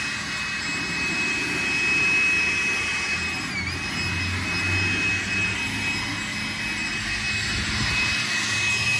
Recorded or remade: recorded